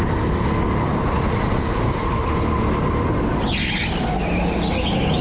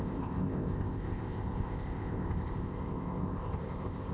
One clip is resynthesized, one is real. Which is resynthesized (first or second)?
second